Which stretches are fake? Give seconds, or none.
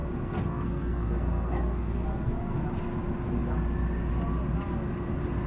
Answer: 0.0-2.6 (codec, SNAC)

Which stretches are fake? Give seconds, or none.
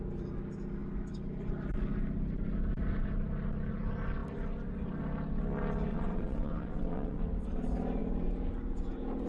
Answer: 5.9-7.2 (vocoder, WaveNeXt)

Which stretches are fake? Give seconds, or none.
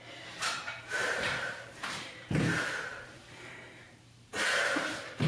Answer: 0.0-5.3 (vocoder, BigVGAN v2)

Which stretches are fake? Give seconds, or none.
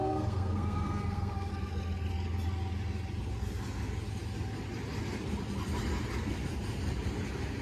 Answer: 0.0-1.5 (codec, SNAC)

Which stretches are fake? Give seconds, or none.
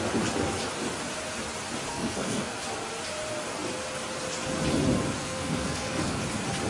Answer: 1.9-2.5 (codec, SNAC); 5.2-6.2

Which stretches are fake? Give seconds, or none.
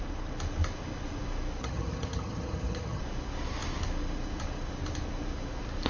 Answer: 1.6-3.0 (vocoder, HiFi-GAN)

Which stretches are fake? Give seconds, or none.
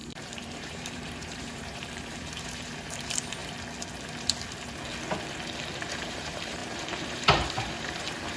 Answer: 0.0-3.4 (vocoder, BigVGAN v2); 5.9-8.4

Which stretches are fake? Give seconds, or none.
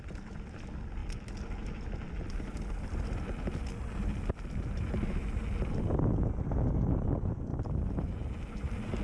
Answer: none